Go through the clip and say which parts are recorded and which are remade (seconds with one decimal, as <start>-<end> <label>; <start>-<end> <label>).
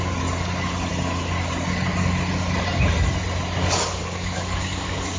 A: 0.0-3.6 recorded; 3.6-5.2 remade